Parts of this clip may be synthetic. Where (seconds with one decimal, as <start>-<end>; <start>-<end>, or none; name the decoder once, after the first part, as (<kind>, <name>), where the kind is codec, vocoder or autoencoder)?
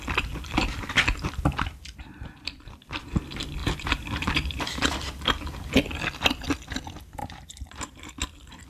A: 3.6-4.9 (vocoder, BigVGAN v2); 7.2-8.1